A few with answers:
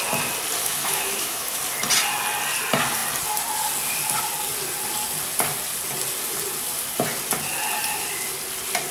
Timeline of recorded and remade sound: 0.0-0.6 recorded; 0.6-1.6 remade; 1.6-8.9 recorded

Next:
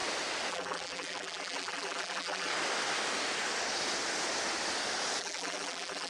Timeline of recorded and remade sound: 0.0-0.5 recorded; 0.5-2.5 remade; 2.5-5.2 recorded; 5.2-6.1 remade